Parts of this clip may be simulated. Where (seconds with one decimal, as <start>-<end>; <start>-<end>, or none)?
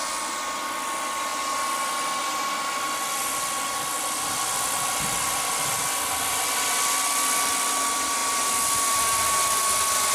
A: none